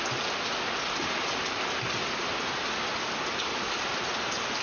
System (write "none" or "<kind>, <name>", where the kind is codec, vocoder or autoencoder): none